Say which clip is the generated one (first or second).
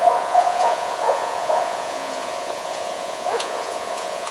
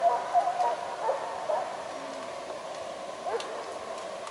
first